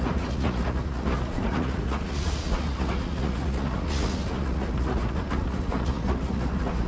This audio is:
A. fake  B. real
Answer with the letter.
A